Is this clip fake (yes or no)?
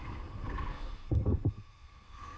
yes